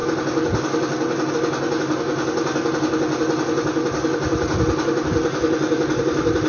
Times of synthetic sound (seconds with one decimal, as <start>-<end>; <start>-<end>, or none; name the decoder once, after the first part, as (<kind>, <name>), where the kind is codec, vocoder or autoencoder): none

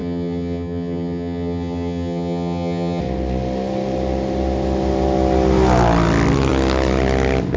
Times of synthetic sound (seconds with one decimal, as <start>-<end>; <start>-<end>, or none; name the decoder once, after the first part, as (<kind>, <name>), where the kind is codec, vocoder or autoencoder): 0.0-3.0 (vocoder, HiFi-GAN)

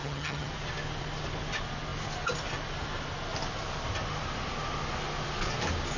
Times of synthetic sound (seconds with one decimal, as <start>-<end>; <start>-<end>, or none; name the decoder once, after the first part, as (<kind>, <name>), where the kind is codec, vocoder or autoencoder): 0.0-0.5 (vocoder, HiFi-GAN)

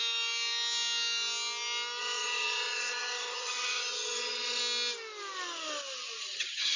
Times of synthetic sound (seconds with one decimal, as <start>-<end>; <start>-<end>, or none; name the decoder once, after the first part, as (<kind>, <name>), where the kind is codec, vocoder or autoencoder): 2.0-4.6 (vocoder, HiFi-GAN); 6.2-6.8

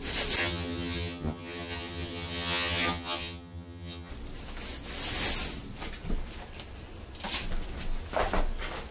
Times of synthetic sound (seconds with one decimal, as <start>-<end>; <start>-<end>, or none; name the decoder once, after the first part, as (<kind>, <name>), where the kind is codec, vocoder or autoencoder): 0.4-4.1 (vocoder, HiFi-GAN)